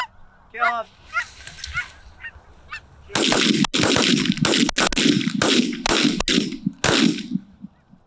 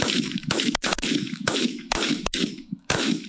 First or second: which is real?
first